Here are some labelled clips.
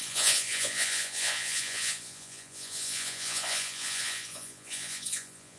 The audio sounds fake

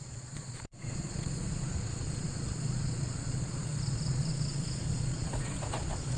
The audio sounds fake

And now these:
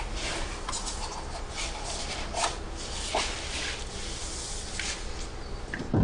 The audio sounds real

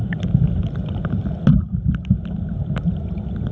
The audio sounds real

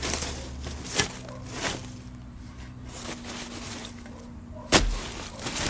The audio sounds real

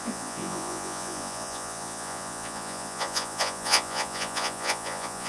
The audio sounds fake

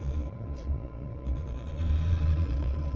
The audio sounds fake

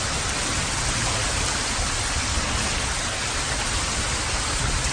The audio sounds real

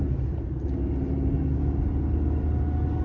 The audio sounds real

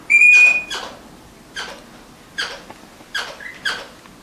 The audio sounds real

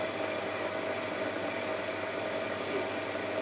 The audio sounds real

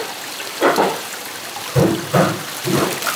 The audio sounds real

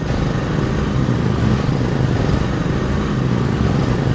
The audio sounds real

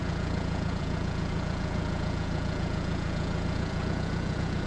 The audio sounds fake